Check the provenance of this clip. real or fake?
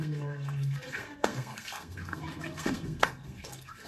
fake